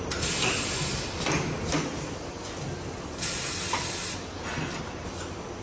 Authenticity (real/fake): real